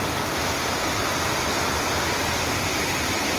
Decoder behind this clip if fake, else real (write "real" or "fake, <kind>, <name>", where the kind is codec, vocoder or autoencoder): real